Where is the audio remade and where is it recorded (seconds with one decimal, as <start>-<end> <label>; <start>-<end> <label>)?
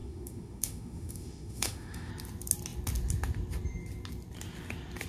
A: 0.0-2.1 remade; 2.1-5.1 recorded